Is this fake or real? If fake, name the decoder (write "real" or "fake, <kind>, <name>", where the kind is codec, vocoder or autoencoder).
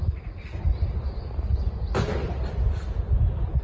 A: real